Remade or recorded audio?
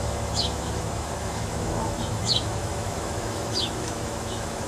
remade